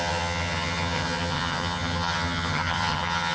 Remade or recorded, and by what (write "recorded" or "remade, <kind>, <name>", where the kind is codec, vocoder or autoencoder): remade, vocoder, HiFi-GAN